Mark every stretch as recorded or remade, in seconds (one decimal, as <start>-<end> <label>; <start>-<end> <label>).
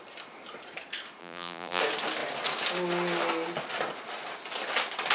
0.0-1.2 recorded; 1.2-1.8 remade; 1.8-5.1 recorded